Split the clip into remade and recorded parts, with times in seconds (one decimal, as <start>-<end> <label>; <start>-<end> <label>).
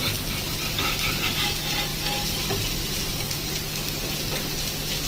0.0-5.1 recorded